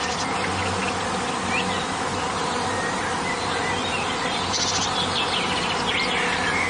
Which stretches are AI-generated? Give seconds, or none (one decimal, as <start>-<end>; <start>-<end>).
none